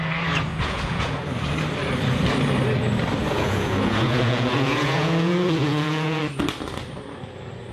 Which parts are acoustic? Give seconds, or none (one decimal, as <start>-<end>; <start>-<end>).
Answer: 0.0-0.5; 1.2-3.2; 6.2-7.7